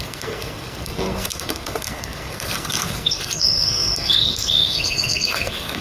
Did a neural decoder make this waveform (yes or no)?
yes